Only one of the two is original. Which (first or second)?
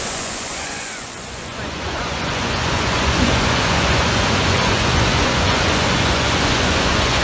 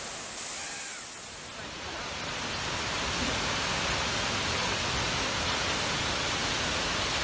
second